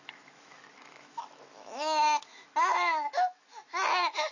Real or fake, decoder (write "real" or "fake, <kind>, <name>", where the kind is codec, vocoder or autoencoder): fake, autoencoder, DAC-VAE